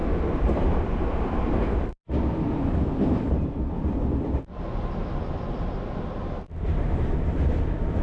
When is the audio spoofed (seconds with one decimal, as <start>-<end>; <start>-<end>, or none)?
0.0-8.0

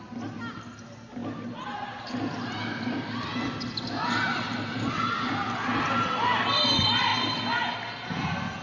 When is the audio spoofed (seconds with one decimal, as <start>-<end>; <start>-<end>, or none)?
none